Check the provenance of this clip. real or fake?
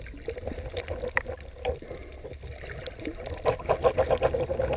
real